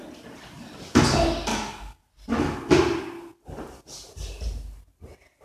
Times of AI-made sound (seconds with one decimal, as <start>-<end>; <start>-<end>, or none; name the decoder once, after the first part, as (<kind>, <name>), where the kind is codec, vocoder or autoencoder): 1.5-2.0 (codec, DAC)